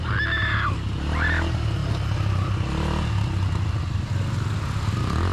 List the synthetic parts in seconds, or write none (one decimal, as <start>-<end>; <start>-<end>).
none